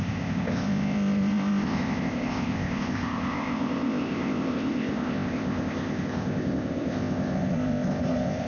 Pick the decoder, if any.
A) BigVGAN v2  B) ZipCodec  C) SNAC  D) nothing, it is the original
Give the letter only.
B